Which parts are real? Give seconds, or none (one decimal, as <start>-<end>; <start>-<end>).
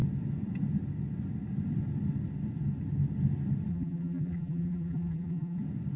0.0-3.7; 5.6-6.0